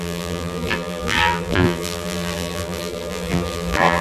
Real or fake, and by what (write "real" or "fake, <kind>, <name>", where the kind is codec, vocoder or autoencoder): fake, vocoder, BigVGAN v2